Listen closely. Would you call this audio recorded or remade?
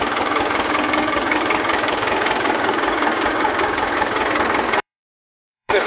remade